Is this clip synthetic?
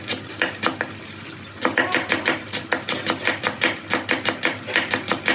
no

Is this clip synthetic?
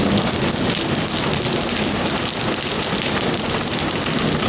no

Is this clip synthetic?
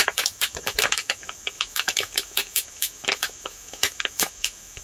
yes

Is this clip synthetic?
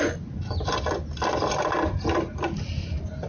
no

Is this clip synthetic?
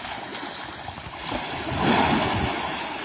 no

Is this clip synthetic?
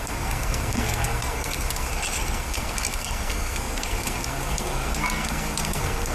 yes